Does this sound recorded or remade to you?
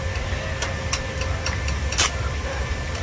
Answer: recorded